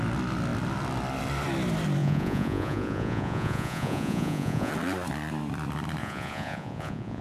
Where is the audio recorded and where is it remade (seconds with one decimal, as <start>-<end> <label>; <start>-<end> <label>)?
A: 0.0-2.0 recorded; 2.0-4.7 remade; 4.7-6.0 recorded; 6.0-7.2 remade